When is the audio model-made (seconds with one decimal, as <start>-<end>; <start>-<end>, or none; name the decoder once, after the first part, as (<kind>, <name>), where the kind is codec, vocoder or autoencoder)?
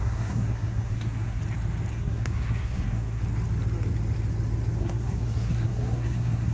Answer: 0.0-1.4 (codec, SNAC); 1.9-3.2; 4.8-6.5